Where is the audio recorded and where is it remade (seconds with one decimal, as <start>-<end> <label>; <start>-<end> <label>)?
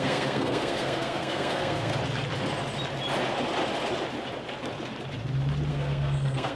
0.0-1.9 remade; 1.9-5.7 recorded; 5.7-6.6 remade